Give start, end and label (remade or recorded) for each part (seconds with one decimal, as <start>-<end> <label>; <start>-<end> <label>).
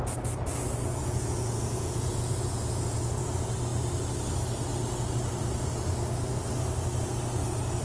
0.0-1.0 recorded; 1.0-3.3 remade; 3.3-7.8 recorded